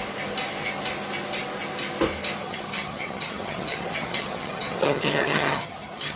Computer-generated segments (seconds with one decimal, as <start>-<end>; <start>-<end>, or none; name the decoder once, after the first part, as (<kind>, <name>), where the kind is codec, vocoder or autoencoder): 2.4-6.2 (vocoder, HiFi-GAN)